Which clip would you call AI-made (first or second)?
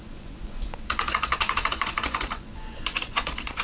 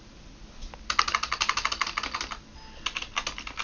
first